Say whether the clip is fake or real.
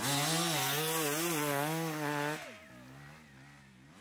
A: real